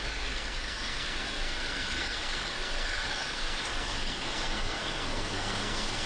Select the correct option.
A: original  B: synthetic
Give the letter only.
B